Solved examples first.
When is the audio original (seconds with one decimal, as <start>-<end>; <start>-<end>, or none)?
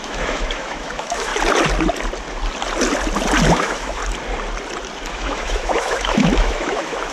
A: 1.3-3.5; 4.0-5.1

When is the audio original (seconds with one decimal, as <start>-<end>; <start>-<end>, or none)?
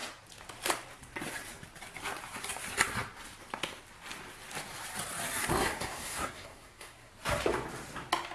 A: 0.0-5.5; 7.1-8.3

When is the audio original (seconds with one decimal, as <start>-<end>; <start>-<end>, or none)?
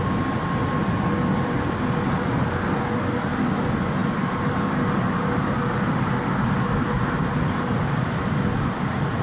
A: 0.0-9.2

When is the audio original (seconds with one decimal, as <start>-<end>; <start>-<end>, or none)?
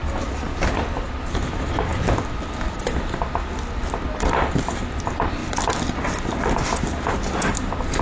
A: 0.0-0.5; 1.1-5.4; 7.0-8.0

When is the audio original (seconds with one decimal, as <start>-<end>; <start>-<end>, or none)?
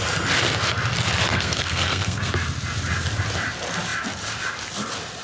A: 0.0-1.3; 2.3-5.2